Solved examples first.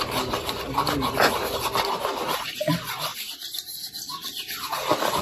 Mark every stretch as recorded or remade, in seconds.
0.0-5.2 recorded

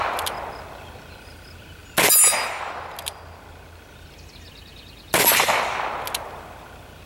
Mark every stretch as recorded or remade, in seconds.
0.0-7.1 recorded

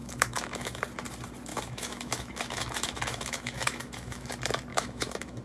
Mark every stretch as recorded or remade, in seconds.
0.0-0.8 remade; 0.8-1.5 recorded; 1.5-4.3 remade; 4.3-4.7 recorded; 4.7-5.4 remade

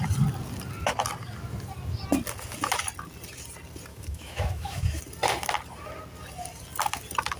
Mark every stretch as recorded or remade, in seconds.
0.0-3.9 recorded; 3.9-5.0 remade; 5.0-7.4 recorded

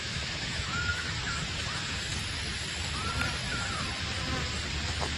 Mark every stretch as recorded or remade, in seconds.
0.0-2.1 remade; 2.1-5.2 recorded

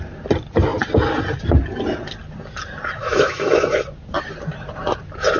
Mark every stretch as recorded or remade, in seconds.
0.0-3.0 recorded; 3.0-3.6 remade; 3.6-5.4 recorded